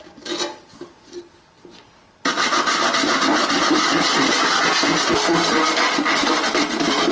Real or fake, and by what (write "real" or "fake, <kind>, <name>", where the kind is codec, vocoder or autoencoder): real